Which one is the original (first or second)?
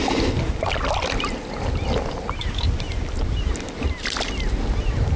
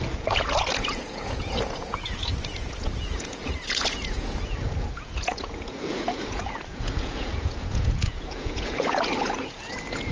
first